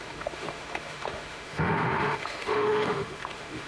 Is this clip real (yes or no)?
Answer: no